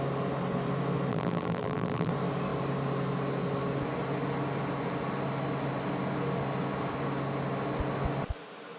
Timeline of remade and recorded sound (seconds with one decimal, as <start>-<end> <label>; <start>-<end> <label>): 0.0-1.1 recorded; 1.1-2.1 remade; 2.1-8.8 recorded